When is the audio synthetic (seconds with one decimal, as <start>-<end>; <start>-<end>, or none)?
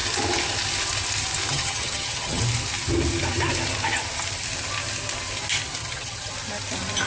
1.5-2.4; 5.8-6.3